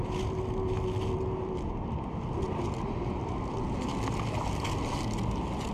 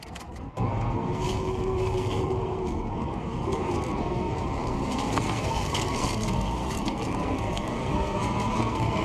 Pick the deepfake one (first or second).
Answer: second